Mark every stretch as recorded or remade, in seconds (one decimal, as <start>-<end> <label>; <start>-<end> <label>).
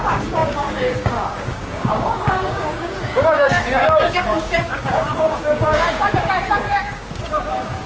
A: 0.0-7.9 remade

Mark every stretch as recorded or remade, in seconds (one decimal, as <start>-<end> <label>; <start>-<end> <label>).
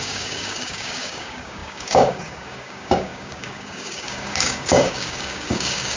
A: 0.0-6.0 remade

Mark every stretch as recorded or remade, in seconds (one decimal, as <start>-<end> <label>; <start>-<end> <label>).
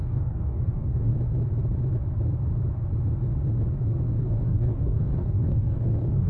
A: 0.0-1.1 remade; 1.1-4.2 recorded; 4.2-6.3 remade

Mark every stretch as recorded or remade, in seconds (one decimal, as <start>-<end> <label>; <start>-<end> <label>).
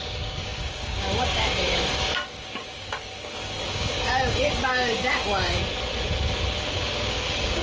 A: 0.0-5.6 remade; 5.6-6.7 recorded; 6.7-7.6 remade